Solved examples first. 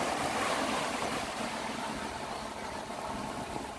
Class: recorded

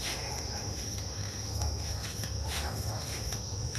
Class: remade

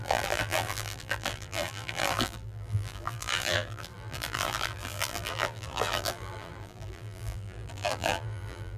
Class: remade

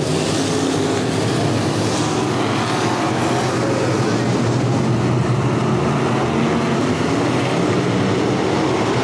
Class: recorded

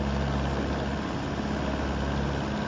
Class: recorded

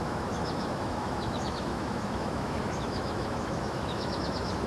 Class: remade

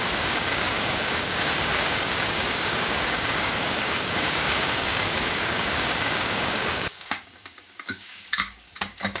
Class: remade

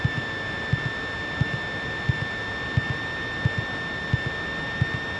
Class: recorded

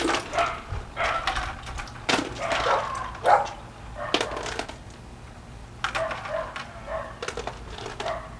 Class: recorded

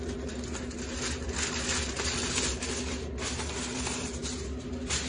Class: recorded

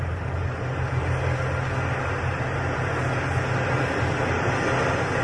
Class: recorded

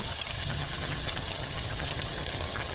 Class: remade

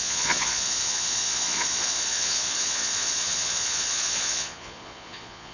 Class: remade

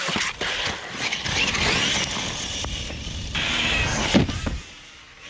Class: recorded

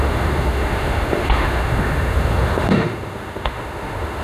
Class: remade